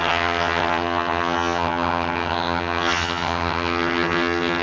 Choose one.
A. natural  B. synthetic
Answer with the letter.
B